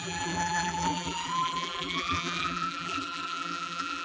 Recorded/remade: remade